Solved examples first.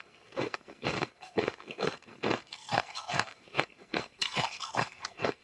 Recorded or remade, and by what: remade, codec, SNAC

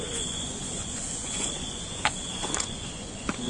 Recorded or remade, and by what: remade, vocoder, Vocos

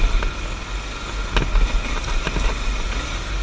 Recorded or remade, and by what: recorded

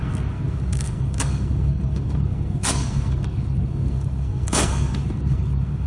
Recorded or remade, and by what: remade, codec, SNAC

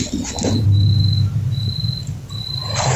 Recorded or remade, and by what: recorded